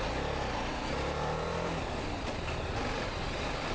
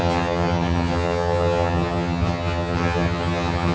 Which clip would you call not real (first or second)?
second